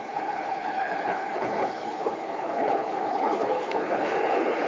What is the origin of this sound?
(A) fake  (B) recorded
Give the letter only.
A